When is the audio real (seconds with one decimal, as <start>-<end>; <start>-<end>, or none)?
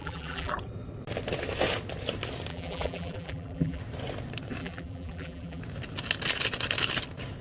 0.5-2.5; 3.8-4.6; 5.6-7.4